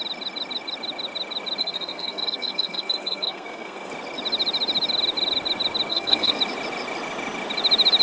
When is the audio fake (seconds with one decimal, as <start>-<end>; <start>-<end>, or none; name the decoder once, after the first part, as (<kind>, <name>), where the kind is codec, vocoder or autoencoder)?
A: 1.6-3.9 (codec, SNAC); 5.9-6.4